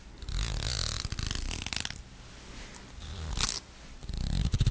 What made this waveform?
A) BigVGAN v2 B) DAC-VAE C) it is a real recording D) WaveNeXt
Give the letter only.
C